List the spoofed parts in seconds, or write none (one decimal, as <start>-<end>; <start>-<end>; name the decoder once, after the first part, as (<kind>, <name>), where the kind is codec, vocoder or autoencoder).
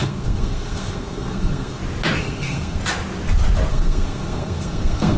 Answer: 0.0-1.8 (codec, SNAC); 2.2-2.8; 3.7-5.2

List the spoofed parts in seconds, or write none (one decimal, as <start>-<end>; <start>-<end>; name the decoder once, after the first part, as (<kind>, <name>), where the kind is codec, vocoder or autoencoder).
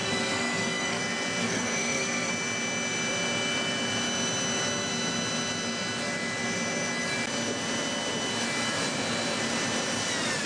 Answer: 0.0-1.0 (codec, SNAC); 1.4-2.3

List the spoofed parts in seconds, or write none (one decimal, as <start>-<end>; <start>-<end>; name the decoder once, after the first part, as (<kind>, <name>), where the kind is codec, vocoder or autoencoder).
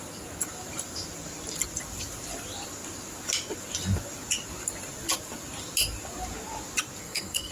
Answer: 7.0-7.5 (codec, SNAC)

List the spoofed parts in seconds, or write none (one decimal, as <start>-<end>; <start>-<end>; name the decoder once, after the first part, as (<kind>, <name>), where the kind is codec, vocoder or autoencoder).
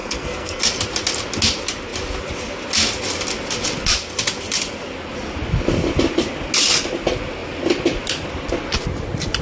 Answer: 0.0-0.6 (codec, SNAC)